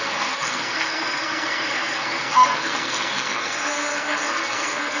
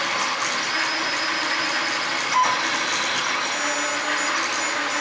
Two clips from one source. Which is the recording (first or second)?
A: second